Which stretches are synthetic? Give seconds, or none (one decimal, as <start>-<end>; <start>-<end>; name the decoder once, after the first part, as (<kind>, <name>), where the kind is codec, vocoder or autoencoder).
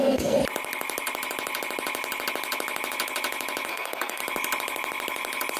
0.0-0.4 (codec, SNAC); 3.7-4.2